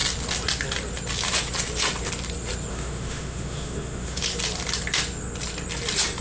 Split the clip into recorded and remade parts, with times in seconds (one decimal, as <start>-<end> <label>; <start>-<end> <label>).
0.0-2.7 recorded; 2.7-4.2 remade; 4.2-6.2 recorded